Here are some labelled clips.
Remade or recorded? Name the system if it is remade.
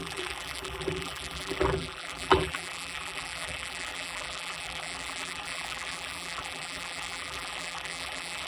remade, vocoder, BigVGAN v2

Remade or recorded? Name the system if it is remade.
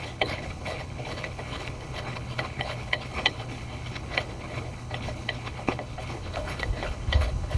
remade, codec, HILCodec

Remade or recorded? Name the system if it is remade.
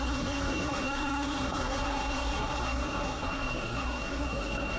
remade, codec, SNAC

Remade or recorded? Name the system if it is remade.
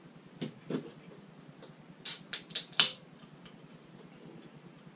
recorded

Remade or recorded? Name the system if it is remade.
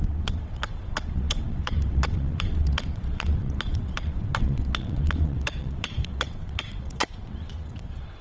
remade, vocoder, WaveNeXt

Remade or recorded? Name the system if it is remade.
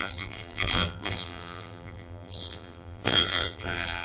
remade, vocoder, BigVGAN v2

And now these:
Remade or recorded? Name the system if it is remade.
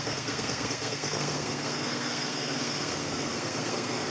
remade, codec, SNAC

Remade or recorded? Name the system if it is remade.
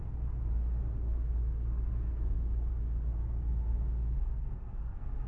remade, codec, SNAC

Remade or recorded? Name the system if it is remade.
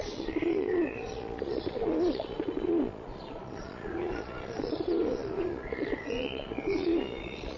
remade, vocoder, Vocos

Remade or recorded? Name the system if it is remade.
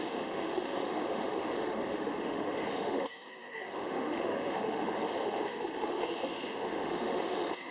remade, autoencoder, DAC-VAE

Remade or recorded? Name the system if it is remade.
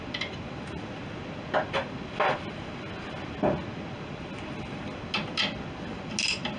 recorded